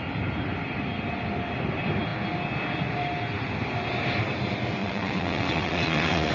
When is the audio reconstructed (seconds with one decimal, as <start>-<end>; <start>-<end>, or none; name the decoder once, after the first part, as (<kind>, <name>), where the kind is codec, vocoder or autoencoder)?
4.8-6.3 (vocoder, WaveNeXt)